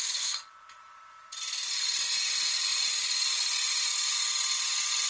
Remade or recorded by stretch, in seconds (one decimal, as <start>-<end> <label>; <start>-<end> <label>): 0.0-5.1 recorded